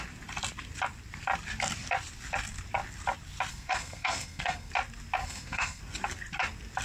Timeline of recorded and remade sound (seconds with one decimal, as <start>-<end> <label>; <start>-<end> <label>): 0.0-3.5 recorded; 3.5-4.7 remade; 4.7-5.2 recorded; 5.2-5.8 remade; 5.8-6.8 recorded